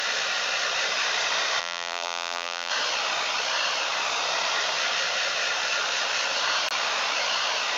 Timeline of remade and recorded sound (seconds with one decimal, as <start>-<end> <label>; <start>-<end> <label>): 0.0-1.6 recorded; 1.6-2.7 remade; 2.7-7.8 recorded